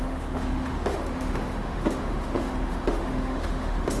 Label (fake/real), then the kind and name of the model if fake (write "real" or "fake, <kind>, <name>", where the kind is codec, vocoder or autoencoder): fake, autoencoder, DAC-VAE